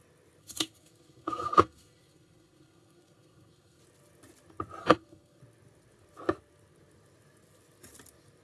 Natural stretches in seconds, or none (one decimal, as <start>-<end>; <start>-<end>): 0.0-0.4; 3.8-4.8; 5.4-8.4